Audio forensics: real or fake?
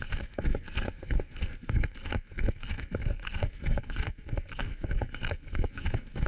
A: fake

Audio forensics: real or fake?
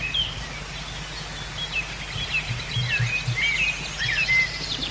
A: real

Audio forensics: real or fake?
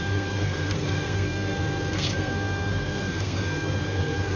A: fake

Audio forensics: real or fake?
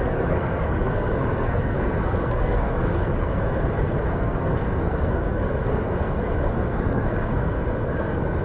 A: fake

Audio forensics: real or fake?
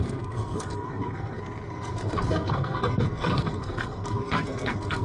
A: fake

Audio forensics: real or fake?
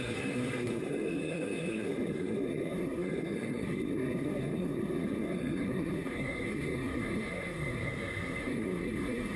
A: fake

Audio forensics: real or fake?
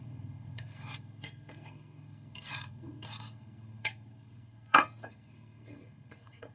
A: fake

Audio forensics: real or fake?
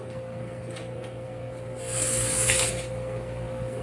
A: fake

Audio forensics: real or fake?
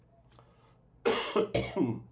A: real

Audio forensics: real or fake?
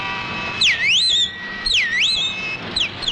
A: real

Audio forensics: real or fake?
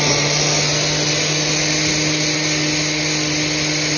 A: real